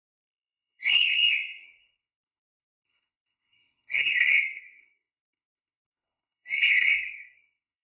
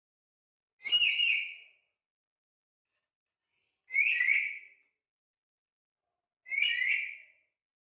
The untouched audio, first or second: second